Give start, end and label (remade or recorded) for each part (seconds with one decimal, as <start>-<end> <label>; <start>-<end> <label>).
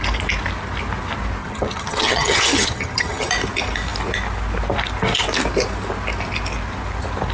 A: 0.0-1.4 recorded; 1.4-3.3 remade; 3.3-7.3 recorded